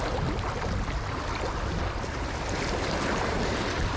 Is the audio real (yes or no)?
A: yes